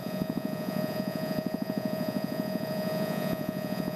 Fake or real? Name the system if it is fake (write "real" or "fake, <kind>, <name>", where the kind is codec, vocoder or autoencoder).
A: fake, vocoder, Vocos